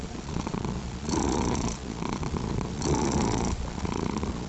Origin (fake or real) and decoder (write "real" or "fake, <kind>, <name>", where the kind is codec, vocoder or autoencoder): fake, vocoder, Vocos